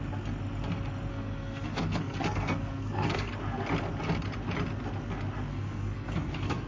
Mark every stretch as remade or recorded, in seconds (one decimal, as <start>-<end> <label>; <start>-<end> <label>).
0.0-1.1 recorded; 1.1-3.3 remade; 3.3-5.5 recorded; 5.5-6.7 remade